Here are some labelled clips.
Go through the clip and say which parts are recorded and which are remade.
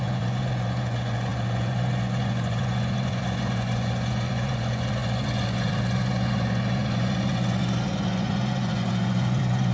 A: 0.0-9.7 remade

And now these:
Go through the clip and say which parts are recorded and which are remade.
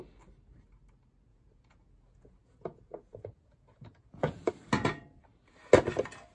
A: 0.0-1.3 recorded; 1.3-4.5 remade; 4.5-6.3 recorded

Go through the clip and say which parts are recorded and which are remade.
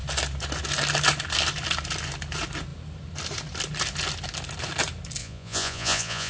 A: 0.0-5.2 recorded; 5.2-6.3 remade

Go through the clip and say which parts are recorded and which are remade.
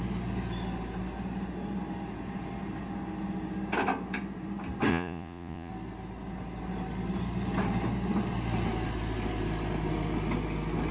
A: 0.0-4.9 recorded; 4.9-5.7 remade; 5.7-10.9 recorded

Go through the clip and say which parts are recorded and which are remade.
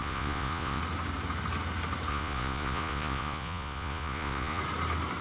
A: 0.0-0.8 remade; 0.8-2.1 recorded; 2.1-4.6 remade; 4.6-5.2 recorded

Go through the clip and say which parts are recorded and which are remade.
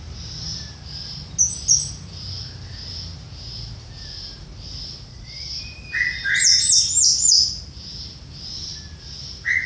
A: 0.0-5.1 recorded; 5.1-5.6 remade; 5.6-9.7 recorded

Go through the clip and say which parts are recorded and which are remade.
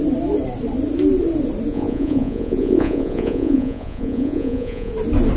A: 0.0-1.7 recorded; 1.7-4.9 remade; 4.9-5.4 recorded